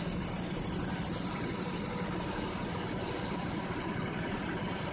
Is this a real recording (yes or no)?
yes